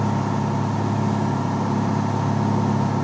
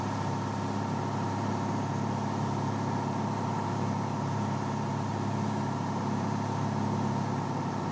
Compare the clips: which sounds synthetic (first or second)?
second